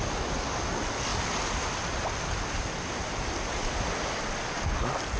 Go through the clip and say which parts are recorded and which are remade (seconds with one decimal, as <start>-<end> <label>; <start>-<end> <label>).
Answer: 0.0-5.2 recorded